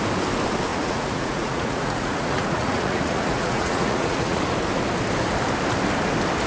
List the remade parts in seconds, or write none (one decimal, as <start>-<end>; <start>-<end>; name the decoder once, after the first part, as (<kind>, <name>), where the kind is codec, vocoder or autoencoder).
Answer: 0.7-4.4 (vocoder, Vocos)